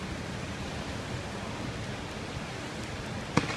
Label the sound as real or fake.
real